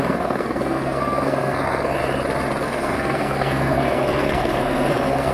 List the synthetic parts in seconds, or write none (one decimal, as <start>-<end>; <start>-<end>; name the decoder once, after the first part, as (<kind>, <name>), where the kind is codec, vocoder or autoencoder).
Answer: 0.0-2.0 (codec, SNAC); 2.6-5.3